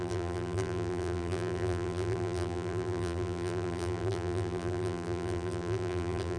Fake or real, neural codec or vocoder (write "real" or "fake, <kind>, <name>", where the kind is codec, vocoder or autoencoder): fake, vocoder, BigVGAN v2